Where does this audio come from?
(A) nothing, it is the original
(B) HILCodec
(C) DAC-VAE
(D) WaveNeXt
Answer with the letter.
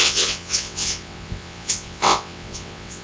D